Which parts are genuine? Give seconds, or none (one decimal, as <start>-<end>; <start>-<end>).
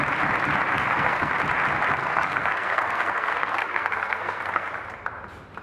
0.0-0.7; 1.3-2.0; 4.7-5.6